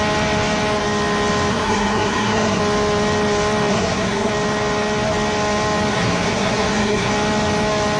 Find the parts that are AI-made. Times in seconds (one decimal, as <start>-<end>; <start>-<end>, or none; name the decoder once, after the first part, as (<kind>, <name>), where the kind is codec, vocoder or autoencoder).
1.5-2.6 (codec, SNAC); 3.7-4.3; 5.9-7.1